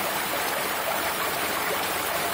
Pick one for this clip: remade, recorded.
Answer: remade